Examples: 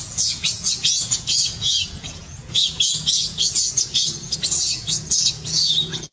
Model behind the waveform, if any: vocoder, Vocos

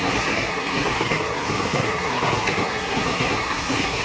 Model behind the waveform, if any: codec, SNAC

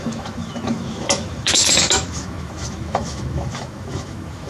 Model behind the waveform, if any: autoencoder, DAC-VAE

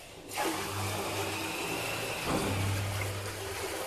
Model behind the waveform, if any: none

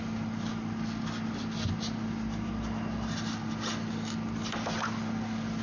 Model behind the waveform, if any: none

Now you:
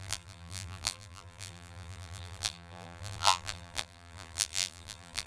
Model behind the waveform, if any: vocoder, BigVGAN v2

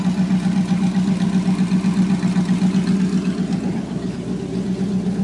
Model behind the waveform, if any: none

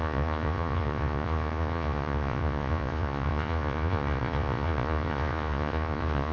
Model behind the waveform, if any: vocoder, Vocos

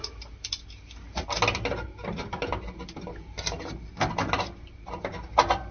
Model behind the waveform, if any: none